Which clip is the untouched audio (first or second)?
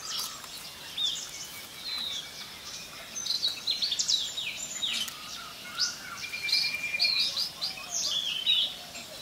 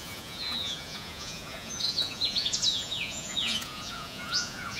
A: first